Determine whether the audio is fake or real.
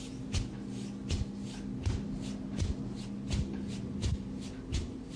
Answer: real